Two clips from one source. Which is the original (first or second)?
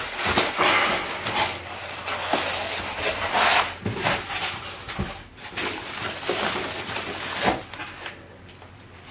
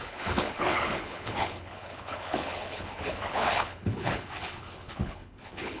first